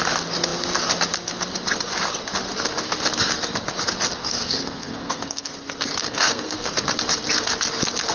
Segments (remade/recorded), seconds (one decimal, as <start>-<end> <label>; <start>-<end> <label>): 0.0-4.2 recorded; 4.2-5.5 remade; 5.5-6.0 recorded; 6.0-6.7 remade; 6.7-8.1 recorded